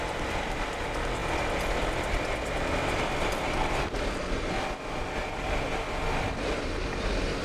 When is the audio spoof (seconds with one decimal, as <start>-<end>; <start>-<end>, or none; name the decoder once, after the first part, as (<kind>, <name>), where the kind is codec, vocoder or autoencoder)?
none